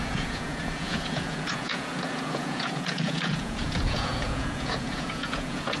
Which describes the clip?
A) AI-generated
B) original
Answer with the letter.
A